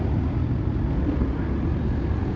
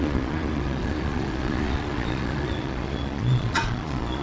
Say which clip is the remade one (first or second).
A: second